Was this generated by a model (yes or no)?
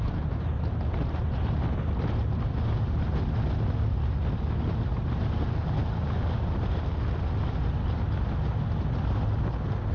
no